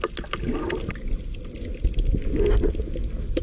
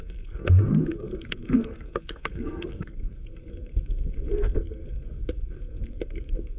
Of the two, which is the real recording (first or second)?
first